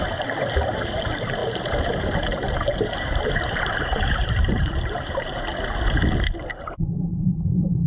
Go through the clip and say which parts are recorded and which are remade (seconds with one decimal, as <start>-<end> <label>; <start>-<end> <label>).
0.0-1.4 recorded; 1.4-5.4 remade; 5.4-7.1 recorded; 7.1-7.9 remade